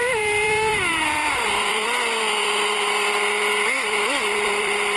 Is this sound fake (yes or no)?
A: yes